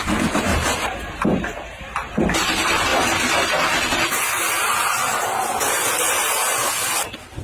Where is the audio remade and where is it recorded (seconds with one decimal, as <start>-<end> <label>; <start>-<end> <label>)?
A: 0.0-0.5 remade; 0.5-1.8 recorded; 1.8-2.9 remade; 2.9-6.9 recorded; 6.9-7.4 remade